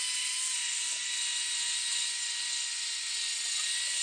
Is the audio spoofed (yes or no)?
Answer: no